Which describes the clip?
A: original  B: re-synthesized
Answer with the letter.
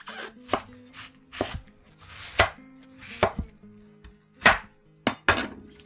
A